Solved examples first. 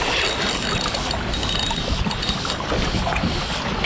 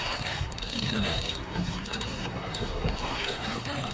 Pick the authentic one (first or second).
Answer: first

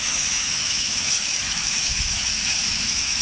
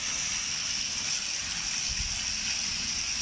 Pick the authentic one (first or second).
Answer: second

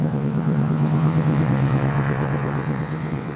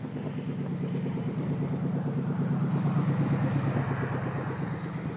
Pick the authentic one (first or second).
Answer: second